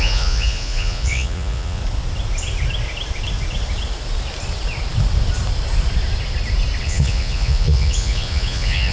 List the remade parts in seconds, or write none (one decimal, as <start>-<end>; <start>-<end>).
0.0-1.8; 6.8-8.9